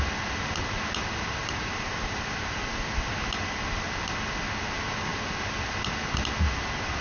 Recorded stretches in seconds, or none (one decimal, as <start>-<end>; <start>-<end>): 0.0-1.4; 3.1-7.0